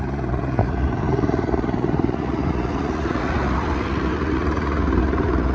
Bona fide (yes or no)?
no